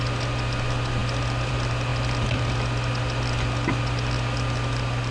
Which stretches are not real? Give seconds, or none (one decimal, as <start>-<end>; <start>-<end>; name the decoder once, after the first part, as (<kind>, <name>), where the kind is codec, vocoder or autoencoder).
none